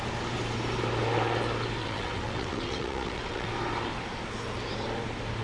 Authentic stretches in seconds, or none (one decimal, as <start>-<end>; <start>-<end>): 0.0-1.8; 3.5-5.4